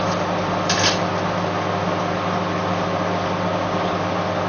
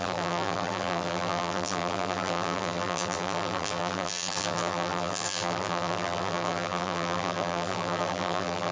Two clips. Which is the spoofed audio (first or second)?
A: second